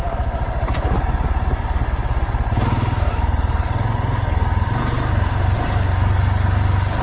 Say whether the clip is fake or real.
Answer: real